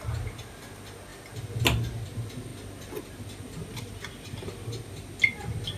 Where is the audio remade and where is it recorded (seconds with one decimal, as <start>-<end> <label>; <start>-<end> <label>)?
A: 0.0-5.8 recorded